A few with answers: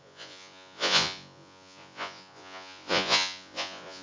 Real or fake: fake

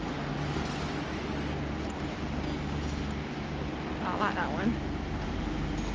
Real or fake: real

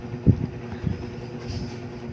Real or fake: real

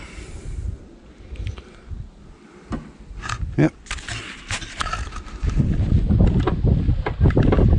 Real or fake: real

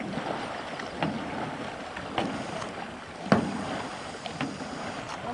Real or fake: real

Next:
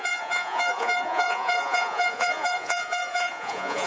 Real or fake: fake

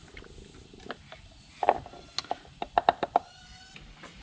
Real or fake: real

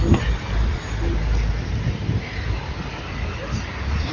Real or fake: real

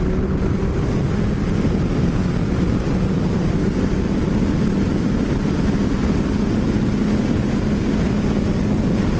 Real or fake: real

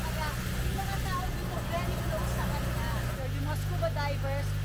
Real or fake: real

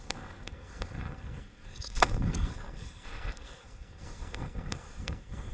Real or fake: fake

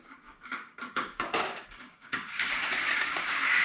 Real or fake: fake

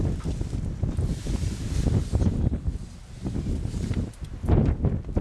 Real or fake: real